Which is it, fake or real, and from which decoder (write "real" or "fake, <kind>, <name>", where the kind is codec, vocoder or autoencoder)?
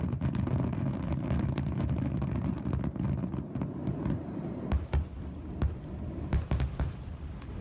real